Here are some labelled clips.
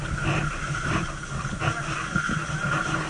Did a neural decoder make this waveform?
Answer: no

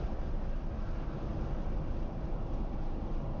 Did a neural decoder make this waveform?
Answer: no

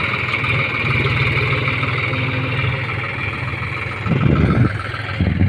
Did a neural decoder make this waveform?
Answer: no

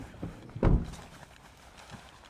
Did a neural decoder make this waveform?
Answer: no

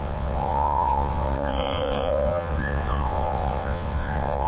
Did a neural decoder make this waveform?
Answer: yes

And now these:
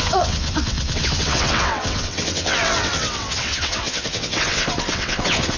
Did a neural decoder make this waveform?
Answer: yes